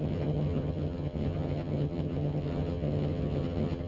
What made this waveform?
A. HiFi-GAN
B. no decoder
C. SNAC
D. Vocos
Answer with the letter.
A